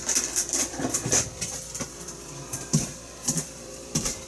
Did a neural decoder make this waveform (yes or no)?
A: yes